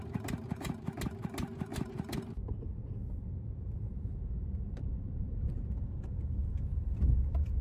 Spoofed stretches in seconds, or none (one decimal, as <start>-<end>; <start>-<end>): 1.7-6.3